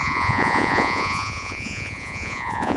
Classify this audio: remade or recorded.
remade